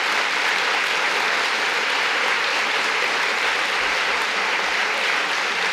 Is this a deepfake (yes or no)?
yes